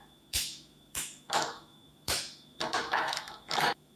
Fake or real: fake